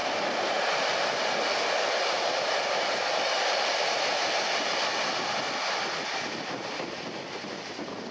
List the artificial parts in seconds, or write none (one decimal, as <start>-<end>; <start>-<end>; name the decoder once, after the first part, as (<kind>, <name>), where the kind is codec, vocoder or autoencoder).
none